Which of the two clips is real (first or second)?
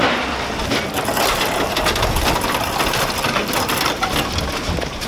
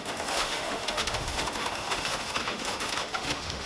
first